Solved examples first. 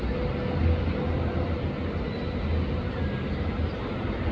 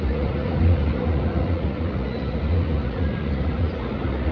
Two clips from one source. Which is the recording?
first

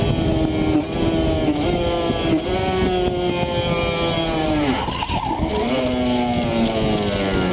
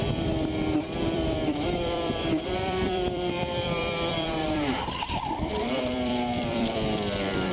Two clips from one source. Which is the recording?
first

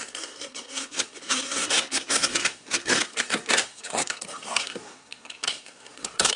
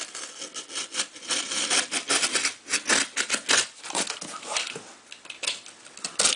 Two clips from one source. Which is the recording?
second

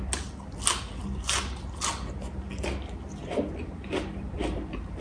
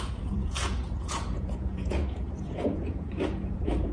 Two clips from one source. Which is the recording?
first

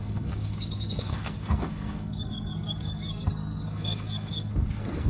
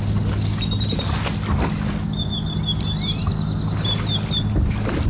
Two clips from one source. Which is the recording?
second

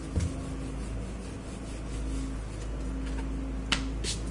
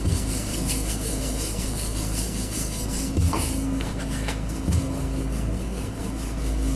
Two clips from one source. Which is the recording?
first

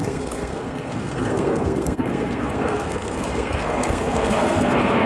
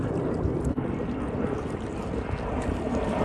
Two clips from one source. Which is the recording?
second